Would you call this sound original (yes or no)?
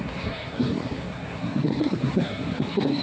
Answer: no